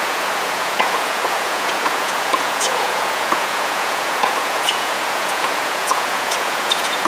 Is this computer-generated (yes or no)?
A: yes